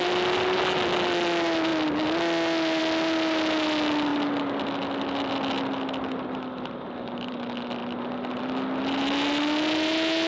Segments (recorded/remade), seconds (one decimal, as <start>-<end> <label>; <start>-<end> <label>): 0.0-10.3 recorded